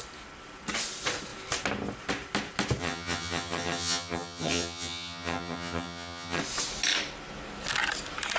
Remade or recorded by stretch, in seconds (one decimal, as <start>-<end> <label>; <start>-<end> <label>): 0.0-2.8 recorded; 2.8-6.4 remade; 6.4-8.4 recorded